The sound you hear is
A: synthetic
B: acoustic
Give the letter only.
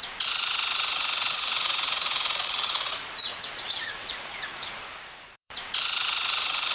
A